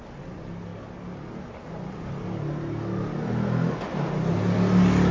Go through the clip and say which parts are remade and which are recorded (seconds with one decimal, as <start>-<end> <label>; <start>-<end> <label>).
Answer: 0.0-5.1 recorded